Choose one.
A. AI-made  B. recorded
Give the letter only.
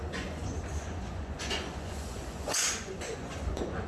A